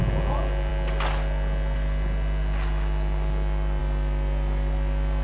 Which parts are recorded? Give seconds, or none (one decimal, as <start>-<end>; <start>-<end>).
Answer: 0.0-5.2